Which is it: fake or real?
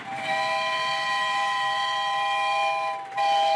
real